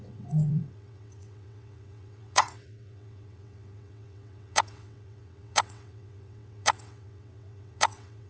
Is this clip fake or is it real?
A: fake